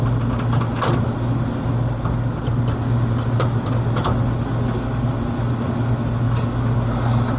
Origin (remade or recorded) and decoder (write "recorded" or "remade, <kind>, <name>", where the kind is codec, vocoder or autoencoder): recorded